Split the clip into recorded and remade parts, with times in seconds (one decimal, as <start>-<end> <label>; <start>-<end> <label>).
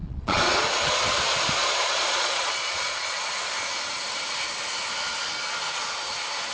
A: 0.0-0.6 remade; 0.6-1.6 recorded; 1.6-3.2 remade; 3.2-6.5 recorded